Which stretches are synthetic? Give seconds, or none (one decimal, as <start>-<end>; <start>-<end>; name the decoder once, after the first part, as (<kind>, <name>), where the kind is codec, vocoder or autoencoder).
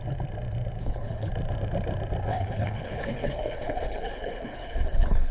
0.8-1.3 (codec, HILCodec); 2.3-5.3